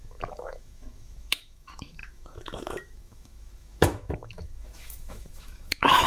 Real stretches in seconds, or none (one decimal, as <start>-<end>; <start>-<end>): none